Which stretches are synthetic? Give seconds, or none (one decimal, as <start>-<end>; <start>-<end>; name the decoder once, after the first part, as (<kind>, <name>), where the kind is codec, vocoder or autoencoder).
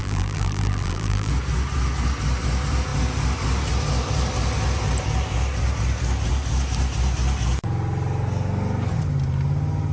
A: 0.0-1.3 (vocoder, BigVGAN v2)